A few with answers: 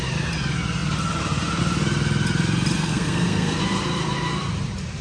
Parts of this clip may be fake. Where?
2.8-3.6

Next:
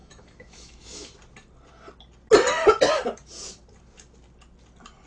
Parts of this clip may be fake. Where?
0.0-1.1

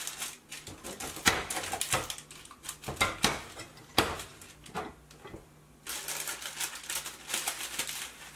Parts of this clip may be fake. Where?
none

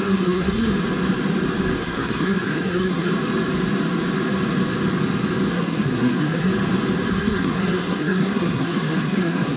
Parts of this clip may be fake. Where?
0.0-0.7; 1.8-3.1; 5.5-6.5; 7.1-9.6

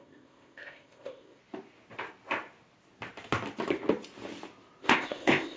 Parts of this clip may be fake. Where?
0.0-1.4; 4.8-5.6